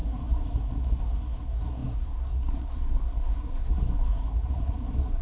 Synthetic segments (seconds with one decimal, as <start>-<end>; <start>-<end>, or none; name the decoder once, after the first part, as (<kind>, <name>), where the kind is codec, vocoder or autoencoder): 0.0-5.2 (codec, SNAC)